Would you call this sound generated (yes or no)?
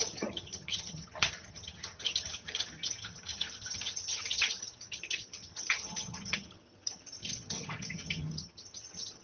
yes